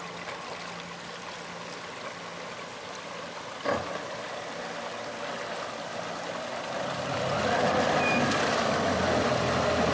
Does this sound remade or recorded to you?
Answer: recorded